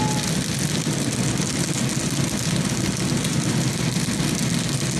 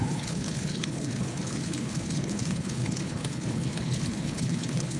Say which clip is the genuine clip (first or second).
first